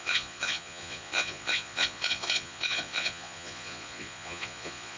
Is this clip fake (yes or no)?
yes